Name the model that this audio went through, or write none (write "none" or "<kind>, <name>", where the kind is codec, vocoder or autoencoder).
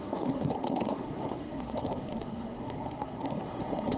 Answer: codec, SNAC